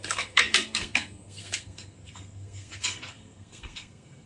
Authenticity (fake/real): fake